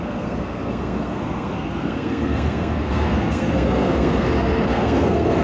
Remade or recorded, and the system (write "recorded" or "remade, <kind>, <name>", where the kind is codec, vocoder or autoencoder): remade, codec, SNAC